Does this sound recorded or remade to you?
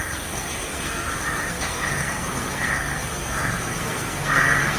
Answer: remade